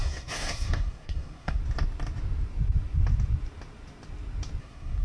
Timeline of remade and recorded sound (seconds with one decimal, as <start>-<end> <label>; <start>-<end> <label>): 0.0-1.6 remade; 1.6-4.6 recorded; 4.6-5.0 remade